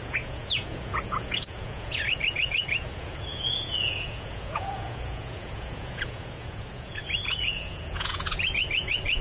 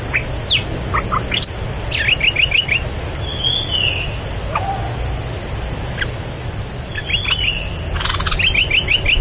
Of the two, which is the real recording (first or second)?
second